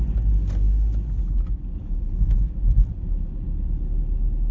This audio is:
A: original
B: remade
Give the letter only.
A